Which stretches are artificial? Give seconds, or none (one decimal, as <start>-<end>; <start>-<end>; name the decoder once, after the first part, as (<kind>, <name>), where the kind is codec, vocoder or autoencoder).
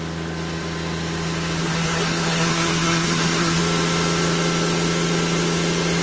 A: 1.6-3.6 (codec, SNAC)